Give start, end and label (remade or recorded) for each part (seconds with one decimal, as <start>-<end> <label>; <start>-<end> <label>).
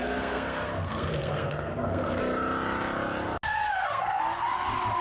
0.0-2.2 remade; 2.2-3.6 recorded; 3.6-4.2 remade; 4.2-5.0 recorded